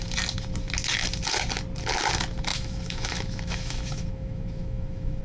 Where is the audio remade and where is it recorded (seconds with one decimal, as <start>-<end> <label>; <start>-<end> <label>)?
0.0-2.5 recorded; 2.5-5.2 remade